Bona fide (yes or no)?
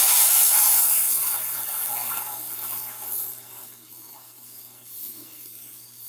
no